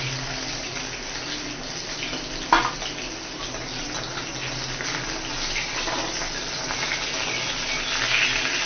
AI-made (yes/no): no